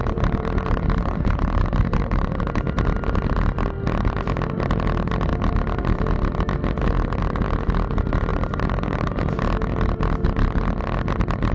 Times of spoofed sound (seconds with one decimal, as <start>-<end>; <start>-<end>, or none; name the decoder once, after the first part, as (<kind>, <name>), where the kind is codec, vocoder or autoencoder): 0.0-2.4 (vocoder, BigVGAN v2); 8.3-9.1